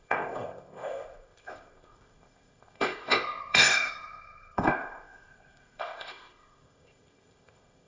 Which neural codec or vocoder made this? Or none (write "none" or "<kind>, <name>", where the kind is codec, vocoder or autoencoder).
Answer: codec, ZipCodec